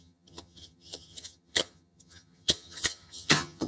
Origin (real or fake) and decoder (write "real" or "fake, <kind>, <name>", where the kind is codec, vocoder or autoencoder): fake, vocoder, HiFi-GAN